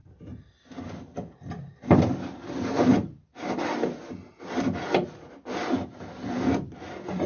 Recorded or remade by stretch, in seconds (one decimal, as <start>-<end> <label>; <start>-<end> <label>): 0.0-7.3 recorded